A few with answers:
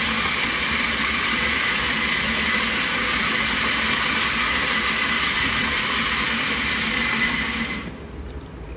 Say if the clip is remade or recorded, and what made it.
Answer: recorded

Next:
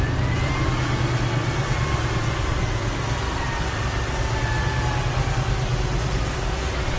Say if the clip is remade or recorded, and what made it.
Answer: recorded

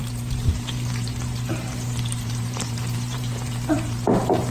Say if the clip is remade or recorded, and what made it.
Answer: remade, vocoder, BigVGAN v2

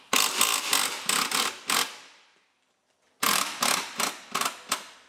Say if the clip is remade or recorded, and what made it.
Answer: remade, vocoder, BigVGAN v2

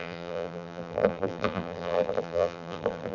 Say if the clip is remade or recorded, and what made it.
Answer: remade, vocoder, BigVGAN v2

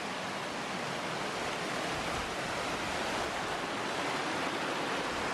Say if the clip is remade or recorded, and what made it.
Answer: recorded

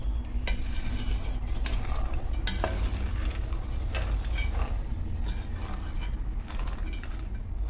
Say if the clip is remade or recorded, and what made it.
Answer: recorded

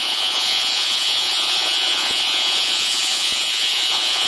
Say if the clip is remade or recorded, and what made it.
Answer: remade, vocoder, Vocos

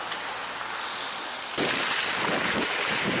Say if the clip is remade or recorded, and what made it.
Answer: recorded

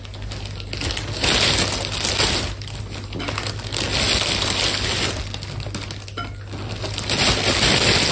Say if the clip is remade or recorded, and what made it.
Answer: recorded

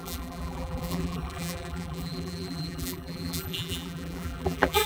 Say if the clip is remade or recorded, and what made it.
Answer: remade, vocoder, BigVGAN v2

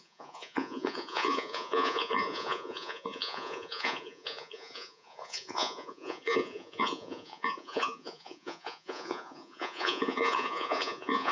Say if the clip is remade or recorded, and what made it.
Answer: remade, vocoder, Vocos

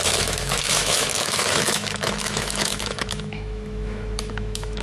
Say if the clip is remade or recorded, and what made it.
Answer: remade, autoencoder, DAC-VAE